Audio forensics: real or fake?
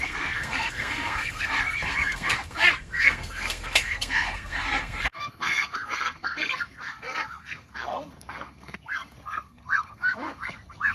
fake